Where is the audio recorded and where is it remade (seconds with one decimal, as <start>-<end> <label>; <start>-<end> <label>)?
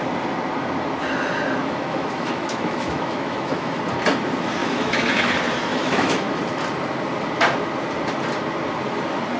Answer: 0.0-1.6 recorded; 1.6-3.8 remade; 3.8-4.6 recorded; 4.6-5.2 remade; 5.2-5.7 recorded; 5.7-6.4 remade; 6.4-9.4 recorded